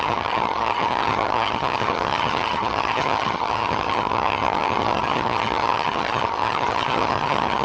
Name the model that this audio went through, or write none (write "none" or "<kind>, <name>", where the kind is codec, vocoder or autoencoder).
vocoder, HiFi-GAN